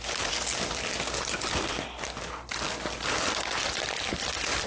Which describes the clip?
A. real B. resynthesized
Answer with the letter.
A